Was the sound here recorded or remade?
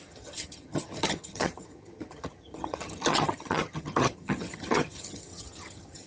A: remade